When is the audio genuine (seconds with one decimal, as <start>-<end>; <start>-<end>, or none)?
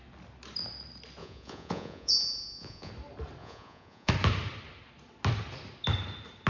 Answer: 0.0-1.2; 2.9-3.4; 4.1-6.5